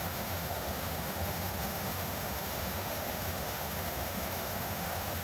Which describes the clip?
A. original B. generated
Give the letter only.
B